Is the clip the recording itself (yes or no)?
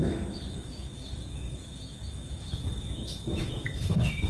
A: no